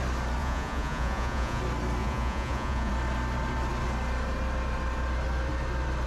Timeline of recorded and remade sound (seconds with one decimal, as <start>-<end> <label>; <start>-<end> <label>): 0.0-0.4 recorded; 0.4-1.6 remade; 1.6-2.0 recorded; 2.0-2.9 remade; 2.9-6.1 recorded